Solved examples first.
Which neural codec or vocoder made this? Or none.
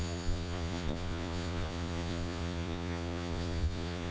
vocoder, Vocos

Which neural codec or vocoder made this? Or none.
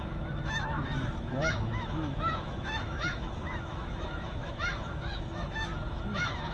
autoencoder, DAC-VAE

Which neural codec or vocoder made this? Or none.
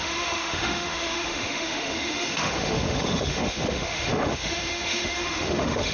autoencoder, DAC-VAE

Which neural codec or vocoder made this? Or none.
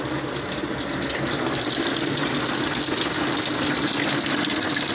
none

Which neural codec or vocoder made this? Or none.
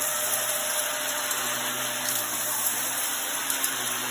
vocoder, BigVGAN v2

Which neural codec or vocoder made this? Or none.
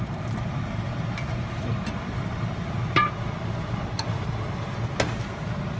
none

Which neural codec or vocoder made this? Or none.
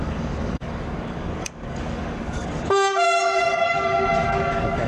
codec, DAC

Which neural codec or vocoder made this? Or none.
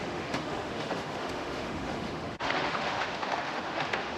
autoencoder, DAC-VAE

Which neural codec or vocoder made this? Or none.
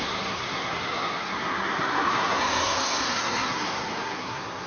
codec, SNAC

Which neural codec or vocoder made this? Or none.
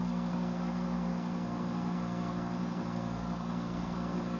codec, SNAC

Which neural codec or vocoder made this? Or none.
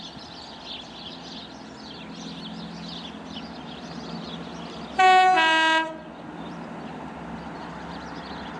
none